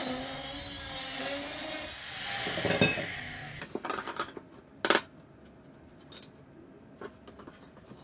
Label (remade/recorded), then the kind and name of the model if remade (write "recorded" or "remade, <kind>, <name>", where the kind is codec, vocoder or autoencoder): recorded